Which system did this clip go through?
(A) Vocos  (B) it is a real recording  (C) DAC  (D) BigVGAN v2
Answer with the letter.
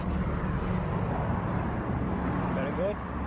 B